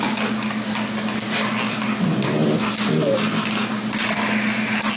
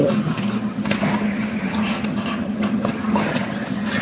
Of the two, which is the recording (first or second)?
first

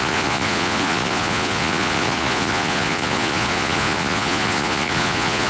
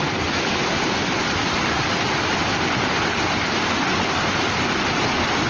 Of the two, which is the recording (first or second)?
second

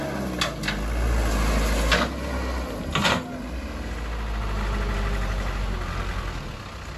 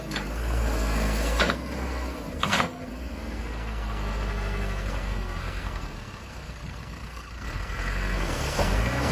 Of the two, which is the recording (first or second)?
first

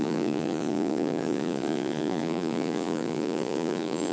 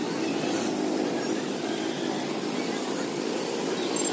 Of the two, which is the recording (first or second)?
second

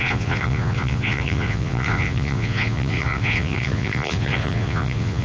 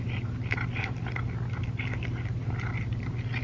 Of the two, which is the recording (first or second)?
second